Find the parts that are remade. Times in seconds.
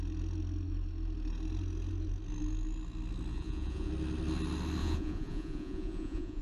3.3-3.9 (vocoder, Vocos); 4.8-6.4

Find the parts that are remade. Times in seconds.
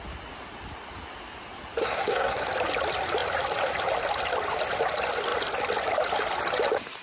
1.8-2.4 (codec, SNAC)